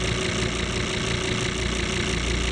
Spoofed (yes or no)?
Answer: no